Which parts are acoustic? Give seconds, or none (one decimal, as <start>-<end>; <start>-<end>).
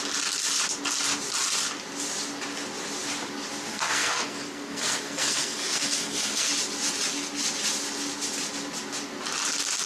0.0-3.7; 6.5-9.9